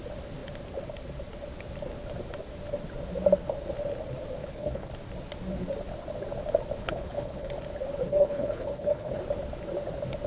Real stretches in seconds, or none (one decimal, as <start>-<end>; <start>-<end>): 0.0-4.4; 4.9-6.8; 7.5-8.1; 9.2-10.3